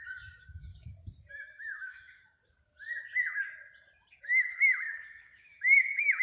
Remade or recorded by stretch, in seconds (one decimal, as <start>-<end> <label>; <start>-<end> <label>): 0.0-0.7 remade; 0.7-1.3 recorded; 1.3-2.4 remade; 2.4-4.2 recorded; 4.2-6.2 remade